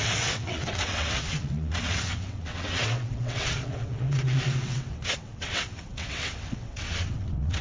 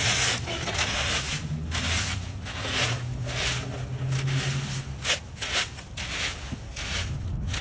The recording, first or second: second